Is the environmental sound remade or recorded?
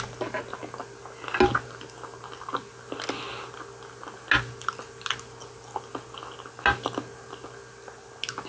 recorded